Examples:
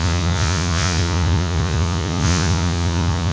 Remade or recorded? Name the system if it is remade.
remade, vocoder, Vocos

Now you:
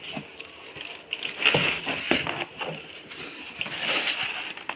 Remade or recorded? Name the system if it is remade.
recorded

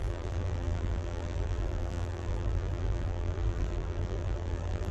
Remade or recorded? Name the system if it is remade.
remade, vocoder, BigVGAN v2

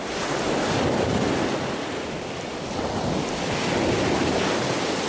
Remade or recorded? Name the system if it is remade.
recorded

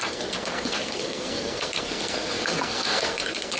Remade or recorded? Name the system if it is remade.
remade, codec, SNAC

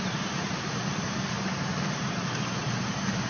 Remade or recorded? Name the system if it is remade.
remade, vocoder, BigVGAN v2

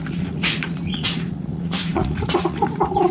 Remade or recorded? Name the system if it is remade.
remade, vocoder, Vocos